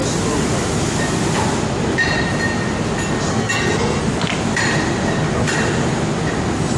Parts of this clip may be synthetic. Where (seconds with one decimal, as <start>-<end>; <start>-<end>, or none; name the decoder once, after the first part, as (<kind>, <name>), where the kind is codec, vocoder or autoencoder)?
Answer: 3.3-4.0 (codec, SNAC)